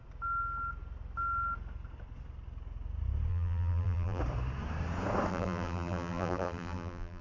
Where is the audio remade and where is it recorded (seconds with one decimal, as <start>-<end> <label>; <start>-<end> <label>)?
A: 0.0-3.3 recorded; 3.3-4.2 remade; 4.2-5.3 recorded; 5.3-7.2 remade